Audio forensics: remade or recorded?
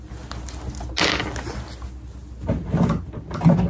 recorded